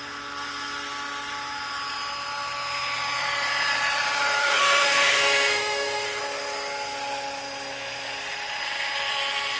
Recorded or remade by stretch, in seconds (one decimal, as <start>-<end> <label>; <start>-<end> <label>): 0.0-4.4 recorded; 4.4-6.2 remade; 6.2-9.6 recorded